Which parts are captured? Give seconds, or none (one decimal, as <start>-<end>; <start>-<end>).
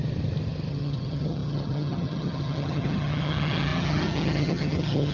0.0-0.7